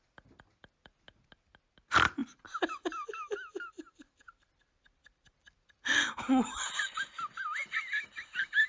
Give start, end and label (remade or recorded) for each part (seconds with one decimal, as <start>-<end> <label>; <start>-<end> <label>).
0.0-2.2 recorded; 2.2-5.4 remade; 5.4-8.7 recorded